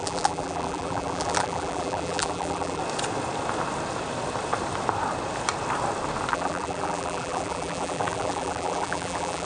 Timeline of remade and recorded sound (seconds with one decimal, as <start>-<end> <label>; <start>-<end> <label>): 0.0-2.8 remade; 2.8-6.3 recorded; 6.3-9.4 remade